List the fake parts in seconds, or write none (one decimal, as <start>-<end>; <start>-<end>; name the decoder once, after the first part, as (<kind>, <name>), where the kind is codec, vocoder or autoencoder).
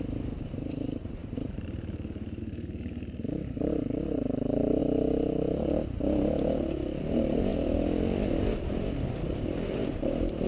0.0-4.8 (vocoder, BigVGAN v2); 7.0-7.5; 8.3-10.5